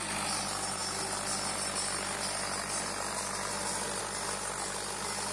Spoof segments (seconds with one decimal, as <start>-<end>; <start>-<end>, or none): none